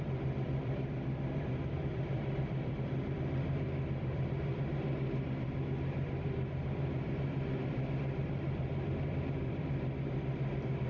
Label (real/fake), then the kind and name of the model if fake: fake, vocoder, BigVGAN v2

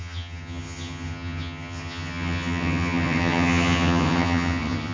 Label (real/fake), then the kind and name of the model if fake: fake, vocoder, HiFi-GAN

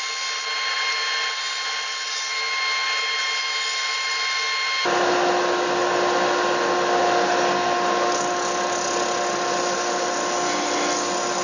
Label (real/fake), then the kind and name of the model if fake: real